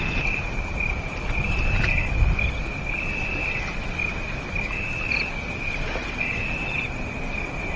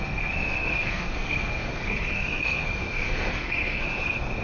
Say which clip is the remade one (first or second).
second